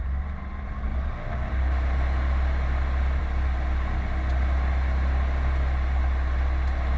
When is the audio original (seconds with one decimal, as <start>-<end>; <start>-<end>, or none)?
0.0-7.0